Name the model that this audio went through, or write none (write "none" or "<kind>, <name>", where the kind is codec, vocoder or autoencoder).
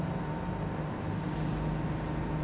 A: none